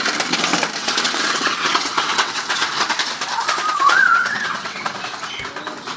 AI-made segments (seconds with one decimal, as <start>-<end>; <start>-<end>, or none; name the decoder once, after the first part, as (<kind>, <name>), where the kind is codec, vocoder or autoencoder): 0.8-2.7 (vocoder, WaveNeXt); 3.7-4.9